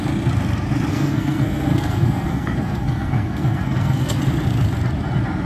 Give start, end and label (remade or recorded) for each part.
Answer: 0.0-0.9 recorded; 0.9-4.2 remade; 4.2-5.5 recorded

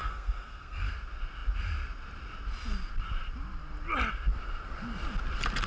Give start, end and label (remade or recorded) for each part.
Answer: 0.0-0.9 remade; 0.9-5.7 recorded

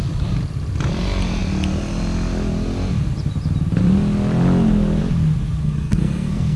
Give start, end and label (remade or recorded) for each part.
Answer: 0.0-5.6 recorded; 5.6-6.6 remade

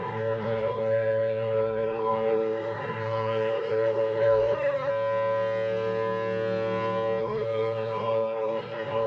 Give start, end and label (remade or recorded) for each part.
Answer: 0.0-4.9 remade; 4.9-7.2 recorded; 7.2-9.1 remade